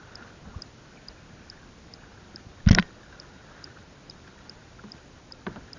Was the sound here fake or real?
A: real